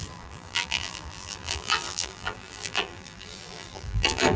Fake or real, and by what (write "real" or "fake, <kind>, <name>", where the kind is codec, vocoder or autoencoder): fake, vocoder, BigVGAN v2